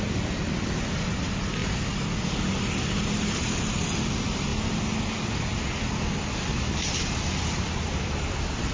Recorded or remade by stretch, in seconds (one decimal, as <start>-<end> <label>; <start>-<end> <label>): 0.0-8.7 recorded